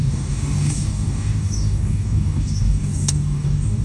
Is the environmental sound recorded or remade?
remade